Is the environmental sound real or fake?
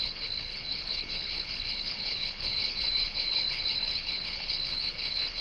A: fake